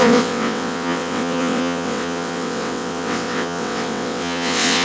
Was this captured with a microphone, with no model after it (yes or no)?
no